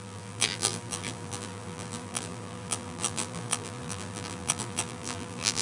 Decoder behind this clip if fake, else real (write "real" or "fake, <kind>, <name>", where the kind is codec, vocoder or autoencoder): fake, vocoder, BigVGAN v2